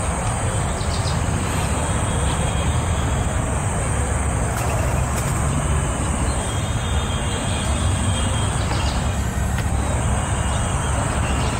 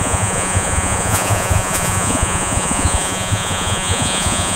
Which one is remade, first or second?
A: second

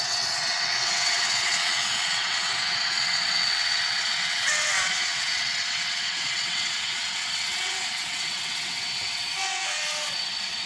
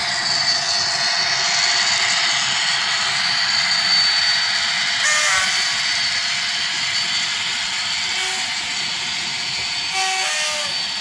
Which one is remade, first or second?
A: first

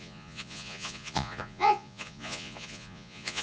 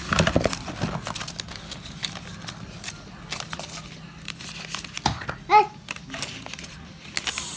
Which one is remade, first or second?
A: first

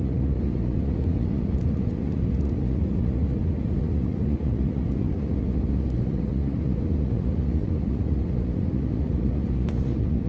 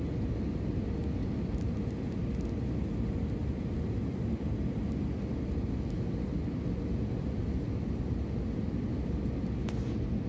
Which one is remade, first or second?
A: first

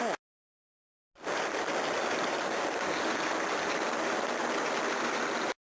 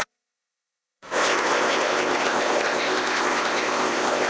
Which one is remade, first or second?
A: second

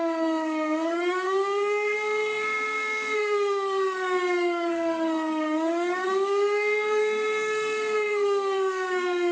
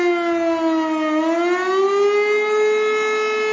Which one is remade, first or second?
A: first